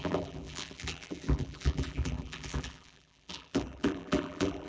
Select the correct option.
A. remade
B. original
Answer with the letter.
A